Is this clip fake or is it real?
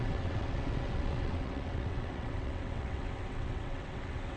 fake